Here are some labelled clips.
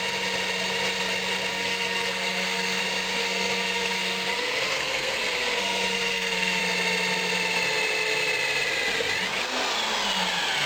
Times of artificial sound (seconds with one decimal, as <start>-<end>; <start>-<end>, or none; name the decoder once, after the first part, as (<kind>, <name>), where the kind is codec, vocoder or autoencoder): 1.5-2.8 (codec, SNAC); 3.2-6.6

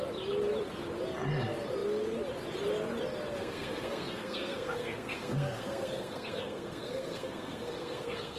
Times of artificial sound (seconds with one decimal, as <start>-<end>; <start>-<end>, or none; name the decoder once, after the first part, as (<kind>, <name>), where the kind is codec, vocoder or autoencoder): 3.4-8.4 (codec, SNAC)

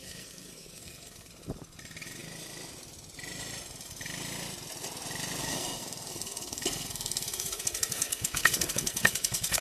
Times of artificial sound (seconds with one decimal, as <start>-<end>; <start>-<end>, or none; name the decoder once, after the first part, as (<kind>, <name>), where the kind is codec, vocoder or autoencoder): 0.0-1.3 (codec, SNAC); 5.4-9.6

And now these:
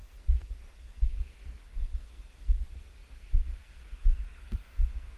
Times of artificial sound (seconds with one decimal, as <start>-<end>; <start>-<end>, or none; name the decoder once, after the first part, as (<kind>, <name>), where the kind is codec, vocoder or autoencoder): 0.0-5.2 (codec, SNAC)